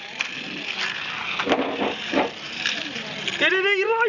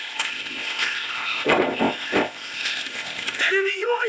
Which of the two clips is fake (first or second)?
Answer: second